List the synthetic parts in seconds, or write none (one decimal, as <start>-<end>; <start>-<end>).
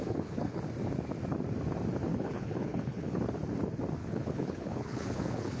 0.0-0.6; 2.1-3.2; 4.0-5.6